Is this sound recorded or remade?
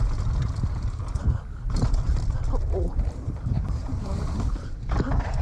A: remade